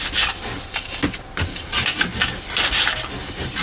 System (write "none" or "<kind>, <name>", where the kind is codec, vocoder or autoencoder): none